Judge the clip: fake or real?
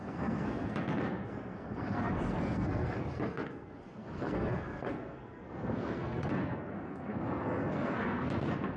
fake